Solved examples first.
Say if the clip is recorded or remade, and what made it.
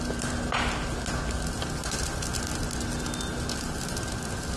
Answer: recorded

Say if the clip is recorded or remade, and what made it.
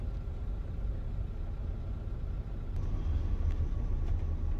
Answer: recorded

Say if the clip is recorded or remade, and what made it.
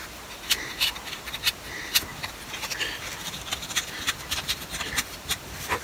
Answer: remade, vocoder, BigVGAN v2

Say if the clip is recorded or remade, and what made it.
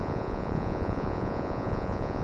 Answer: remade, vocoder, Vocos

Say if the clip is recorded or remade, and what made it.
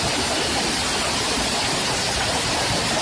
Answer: recorded